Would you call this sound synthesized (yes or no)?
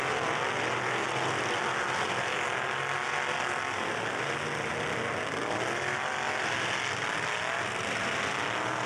no